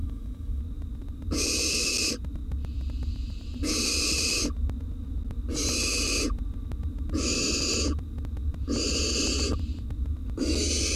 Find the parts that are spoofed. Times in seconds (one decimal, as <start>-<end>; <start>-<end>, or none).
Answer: 0.0-0.6